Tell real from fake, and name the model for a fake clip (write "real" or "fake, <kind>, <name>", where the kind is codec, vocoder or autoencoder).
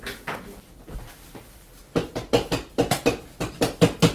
real